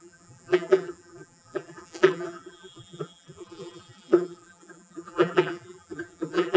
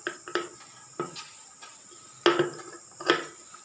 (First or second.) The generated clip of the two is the first